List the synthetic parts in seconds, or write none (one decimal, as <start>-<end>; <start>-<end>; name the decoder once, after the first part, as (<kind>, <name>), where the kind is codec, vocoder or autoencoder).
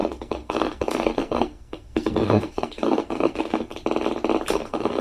0.0-3.7 (codec, SNAC); 4.5-5.0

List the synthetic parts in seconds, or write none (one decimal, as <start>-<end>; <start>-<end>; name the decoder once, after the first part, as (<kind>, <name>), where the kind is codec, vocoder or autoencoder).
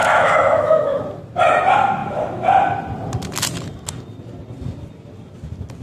0.0-1.0 (autoencoder, DAC-VAE)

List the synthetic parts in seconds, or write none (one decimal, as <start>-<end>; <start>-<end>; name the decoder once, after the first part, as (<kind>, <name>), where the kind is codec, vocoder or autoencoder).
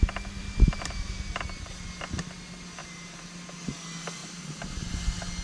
0.4-1.4 (vocoder, BigVGAN v2); 2.8-3.4; 4.2-4.7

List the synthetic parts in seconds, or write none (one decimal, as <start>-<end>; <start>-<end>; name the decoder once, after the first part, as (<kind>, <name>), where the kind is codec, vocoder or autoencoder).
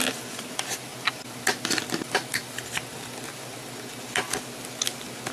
none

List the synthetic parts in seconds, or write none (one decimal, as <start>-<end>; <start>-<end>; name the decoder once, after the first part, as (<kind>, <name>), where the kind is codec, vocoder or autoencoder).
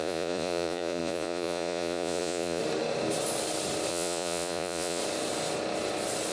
0.0-2.6 (vocoder, Vocos); 3.9-5.0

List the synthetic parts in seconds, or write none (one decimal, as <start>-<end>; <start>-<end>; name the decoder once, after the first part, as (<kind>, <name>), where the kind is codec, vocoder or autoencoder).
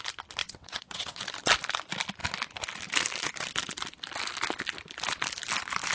0.4-1.2 (vocoder, WaveNeXt)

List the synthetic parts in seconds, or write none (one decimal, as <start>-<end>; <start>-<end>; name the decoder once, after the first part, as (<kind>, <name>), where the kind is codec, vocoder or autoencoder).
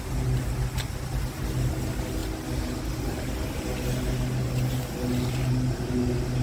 none